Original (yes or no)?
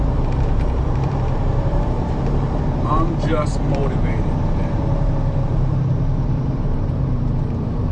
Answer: no